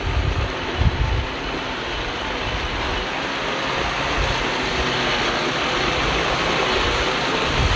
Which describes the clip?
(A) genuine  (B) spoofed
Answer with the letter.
A